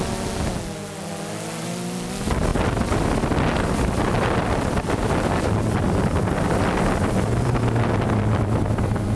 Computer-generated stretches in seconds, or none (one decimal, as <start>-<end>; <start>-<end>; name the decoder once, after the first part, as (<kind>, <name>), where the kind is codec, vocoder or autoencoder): none